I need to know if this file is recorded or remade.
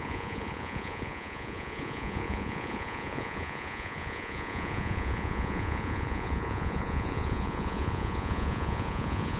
remade